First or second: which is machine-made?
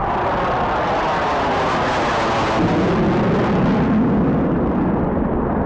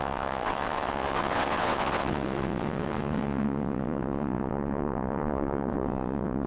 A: second